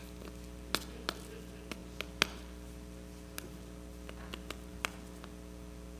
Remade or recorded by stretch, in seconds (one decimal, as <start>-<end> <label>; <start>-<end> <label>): 0.0-6.0 recorded